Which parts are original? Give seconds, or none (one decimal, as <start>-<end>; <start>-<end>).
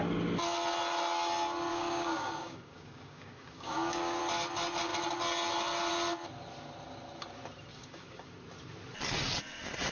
0.0-1.7; 4.2-7.7; 8.3-9.9